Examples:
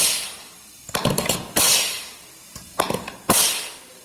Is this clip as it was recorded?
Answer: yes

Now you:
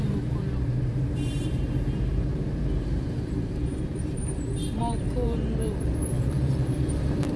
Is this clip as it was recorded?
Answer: no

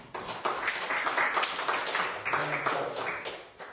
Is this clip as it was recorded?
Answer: yes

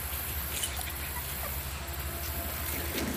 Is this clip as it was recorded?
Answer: yes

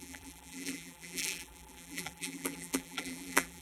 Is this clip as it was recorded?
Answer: no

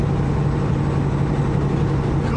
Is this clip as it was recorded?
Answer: yes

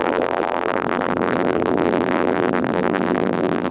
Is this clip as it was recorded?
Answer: no